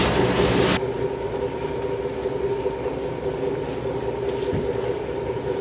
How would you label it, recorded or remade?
recorded